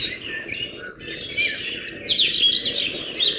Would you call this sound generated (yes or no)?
no